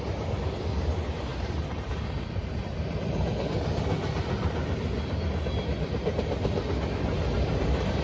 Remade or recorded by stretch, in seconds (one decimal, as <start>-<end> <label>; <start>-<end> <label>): 0.0-1.3 recorded; 1.3-2.6 remade; 2.6-8.0 recorded